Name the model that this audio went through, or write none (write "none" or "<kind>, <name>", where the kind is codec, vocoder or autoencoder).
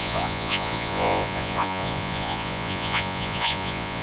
vocoder, Vocos